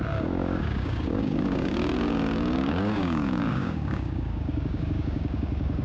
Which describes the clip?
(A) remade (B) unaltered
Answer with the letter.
A